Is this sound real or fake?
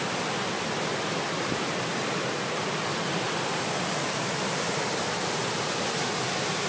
real